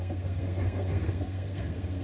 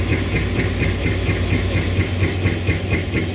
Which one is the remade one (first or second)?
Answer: first